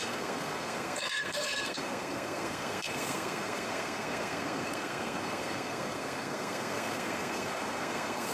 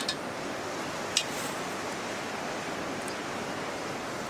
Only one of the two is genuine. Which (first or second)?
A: second